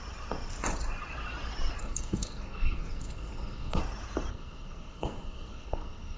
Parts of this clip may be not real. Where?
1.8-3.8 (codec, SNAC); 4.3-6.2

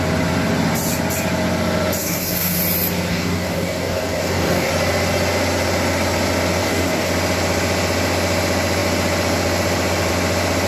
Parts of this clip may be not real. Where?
2.0-2.6 (codec, DAC); 3.1-4.7; 6.6-7.1

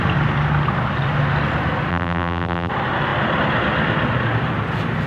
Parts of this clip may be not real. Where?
1.9-2.7 (vocoder, BigVGAN v2)

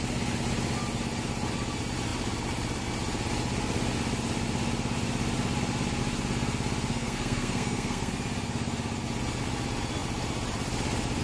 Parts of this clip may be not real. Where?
6.9-8.1 (codec, SNAC)

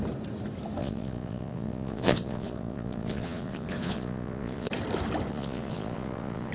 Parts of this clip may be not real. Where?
0.8-4.7 (vocoder, Vocos); 5.3-6.5